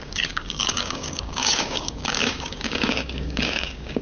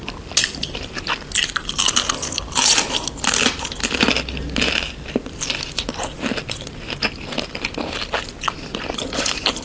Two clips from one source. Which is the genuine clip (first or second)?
second